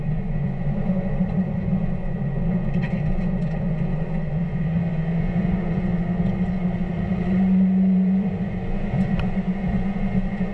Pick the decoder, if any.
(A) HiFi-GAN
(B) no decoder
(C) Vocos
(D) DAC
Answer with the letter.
C